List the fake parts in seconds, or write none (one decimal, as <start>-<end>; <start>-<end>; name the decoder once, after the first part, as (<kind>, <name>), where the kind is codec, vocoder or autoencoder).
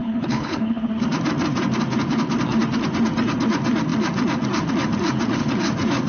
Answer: 0.0-0.9 (codec, HILCodec)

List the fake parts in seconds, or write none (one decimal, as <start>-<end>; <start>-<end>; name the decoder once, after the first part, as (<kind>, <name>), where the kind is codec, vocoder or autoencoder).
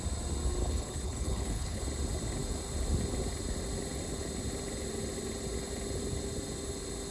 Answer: 0.6-1.8 (codec, HILCodec)